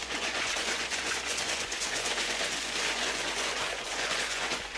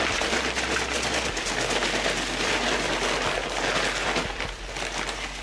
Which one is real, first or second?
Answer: second